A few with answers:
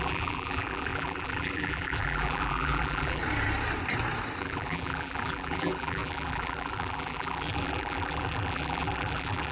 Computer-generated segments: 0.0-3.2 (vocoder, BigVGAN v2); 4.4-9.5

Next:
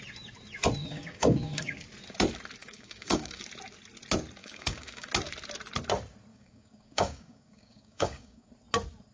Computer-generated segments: 0.8-1.8 (codec, DAC); 2.6-3.4; 4.4-5.1; 6.3-8.5

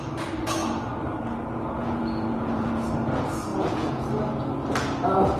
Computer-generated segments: 1.8-2.8 (vocoder, Vocos); 3.5-4.1

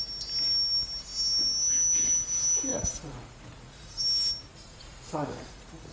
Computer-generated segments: 2.7-4.0 (vocoder, Vocos); 4.5-5.9

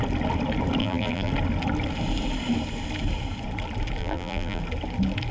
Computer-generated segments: 0.8-1.3 (vocoder, BigVGAN v2); 4.0-4.6

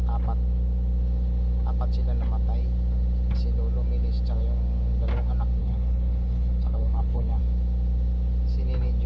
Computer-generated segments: 5.6-7.4 (codec, HILCodec)

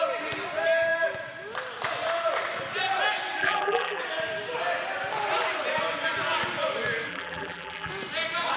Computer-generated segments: 3.4-4.0 (vocoder, BigVGAN v2); 7.1-7.9

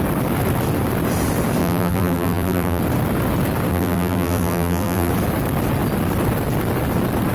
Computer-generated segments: 1.6-2.8 (vocoder, BigVGAN v2); 3.7-5.1